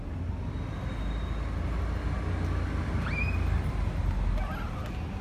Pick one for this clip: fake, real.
real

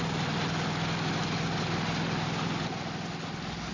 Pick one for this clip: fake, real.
real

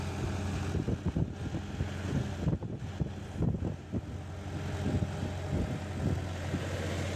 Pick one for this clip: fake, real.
real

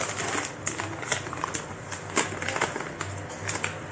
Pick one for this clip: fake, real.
real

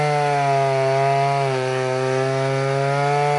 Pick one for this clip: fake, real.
real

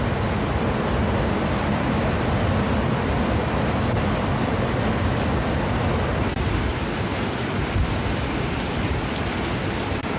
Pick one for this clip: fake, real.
real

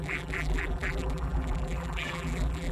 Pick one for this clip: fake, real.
fake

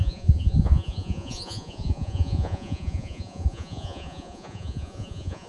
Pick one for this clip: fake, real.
fake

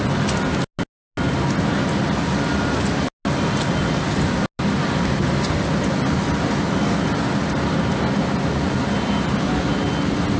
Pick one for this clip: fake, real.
real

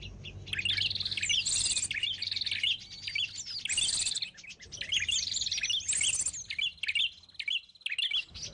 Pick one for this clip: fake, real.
real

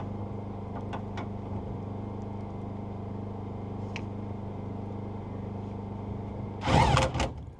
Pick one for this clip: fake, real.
real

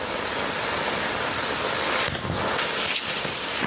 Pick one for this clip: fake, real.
real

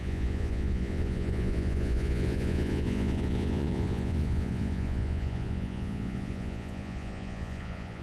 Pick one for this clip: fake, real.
fake